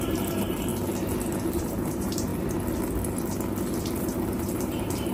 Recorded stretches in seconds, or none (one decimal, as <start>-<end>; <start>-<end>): 0.7-1.5; 2.3-3.8